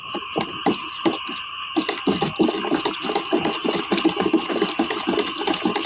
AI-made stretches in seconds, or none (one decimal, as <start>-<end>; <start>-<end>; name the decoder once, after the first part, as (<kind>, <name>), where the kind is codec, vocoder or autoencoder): none